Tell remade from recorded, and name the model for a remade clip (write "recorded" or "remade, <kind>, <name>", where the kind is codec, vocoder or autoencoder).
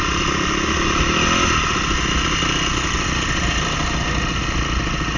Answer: recorded